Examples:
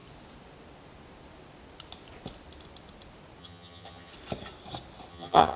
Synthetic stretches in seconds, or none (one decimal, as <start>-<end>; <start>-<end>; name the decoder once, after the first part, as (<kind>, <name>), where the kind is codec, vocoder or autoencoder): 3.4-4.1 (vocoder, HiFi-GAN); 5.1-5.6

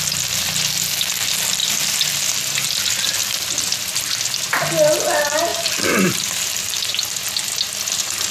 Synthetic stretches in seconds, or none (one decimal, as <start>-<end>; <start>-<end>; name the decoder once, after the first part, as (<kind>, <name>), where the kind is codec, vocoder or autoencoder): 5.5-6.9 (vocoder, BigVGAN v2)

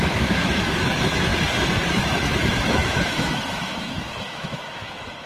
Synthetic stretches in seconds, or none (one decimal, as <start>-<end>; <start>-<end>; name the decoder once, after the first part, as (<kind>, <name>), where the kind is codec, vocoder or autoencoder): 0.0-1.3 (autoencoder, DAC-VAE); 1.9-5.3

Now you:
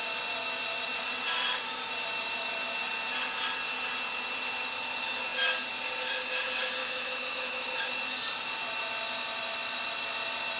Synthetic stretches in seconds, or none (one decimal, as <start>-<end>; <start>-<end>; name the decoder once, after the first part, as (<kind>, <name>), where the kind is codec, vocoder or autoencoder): 6.8-7.9 (autoencoder, DAC-VAE)